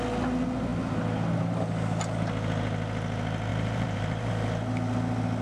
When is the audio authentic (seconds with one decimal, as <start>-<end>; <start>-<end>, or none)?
0.0-3.5; 4.3-5.4